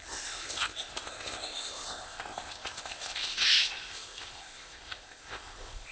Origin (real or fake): fake